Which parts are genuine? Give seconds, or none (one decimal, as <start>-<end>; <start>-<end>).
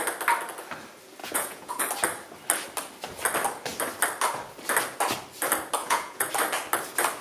0.0-1.2; 1.8-5.8; 6.3-7.2